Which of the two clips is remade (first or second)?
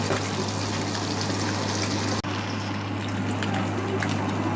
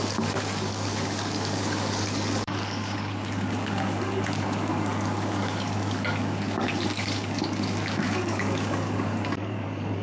second